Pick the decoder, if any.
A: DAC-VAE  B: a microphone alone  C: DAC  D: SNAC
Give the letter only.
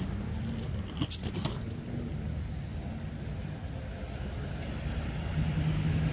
B